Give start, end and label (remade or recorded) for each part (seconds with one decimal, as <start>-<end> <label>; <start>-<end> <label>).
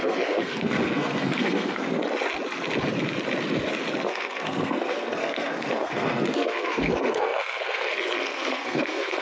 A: 0.0-2.0 remade; 2.0-4.1 recorded; 4.1-9.2 remade